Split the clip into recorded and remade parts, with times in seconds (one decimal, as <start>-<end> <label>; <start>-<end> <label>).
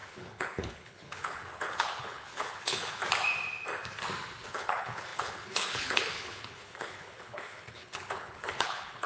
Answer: 0.0-3.0 remade; 3.0-4.5 recorded; 4.5-9.1 remade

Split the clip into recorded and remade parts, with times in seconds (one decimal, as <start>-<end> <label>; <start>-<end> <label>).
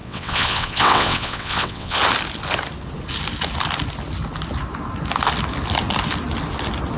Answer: 0.0-2.0 remade; 2.0-7.0 recorded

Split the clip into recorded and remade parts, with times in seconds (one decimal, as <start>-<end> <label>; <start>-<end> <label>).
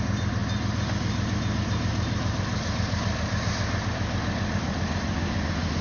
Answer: 0.0-0.4 remade; 0.4-1.6 recorded; 1.6-5.8 remade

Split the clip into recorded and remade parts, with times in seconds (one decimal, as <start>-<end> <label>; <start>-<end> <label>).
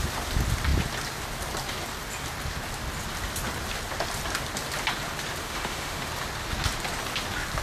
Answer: 0.0-5.4 recorded; 5.4-6.1 remade; 6.1-7.6 recorded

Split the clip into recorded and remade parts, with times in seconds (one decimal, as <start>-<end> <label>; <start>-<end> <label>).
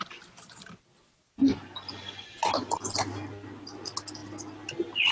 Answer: 0.0-5.1 recorded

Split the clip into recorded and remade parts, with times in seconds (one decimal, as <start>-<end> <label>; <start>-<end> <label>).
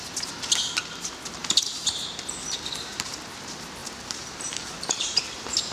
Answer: 0.0-3.8 recorded; 3.8-5.2 remade; 5.2-5.7 recorded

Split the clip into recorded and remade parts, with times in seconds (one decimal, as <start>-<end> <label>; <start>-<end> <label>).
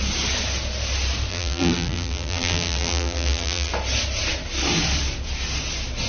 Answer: 0.0-1.3 recorded; 1.3-3.7 remade; 3.7-6.1 recorded